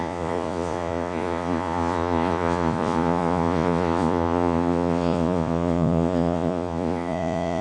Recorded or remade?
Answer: remade